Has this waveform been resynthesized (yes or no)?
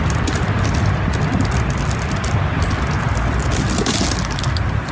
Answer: no